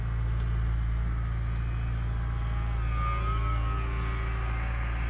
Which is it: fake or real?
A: real